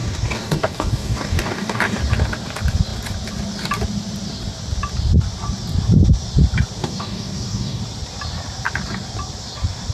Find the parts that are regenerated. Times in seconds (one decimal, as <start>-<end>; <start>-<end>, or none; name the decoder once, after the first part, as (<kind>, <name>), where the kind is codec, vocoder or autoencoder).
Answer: 0.0-2.0 (codec, DAC); 6.8-7.8